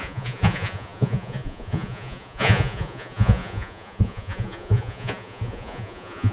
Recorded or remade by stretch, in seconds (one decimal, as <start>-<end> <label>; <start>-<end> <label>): 0.0-6.3 remade